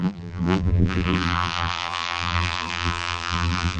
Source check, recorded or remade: remade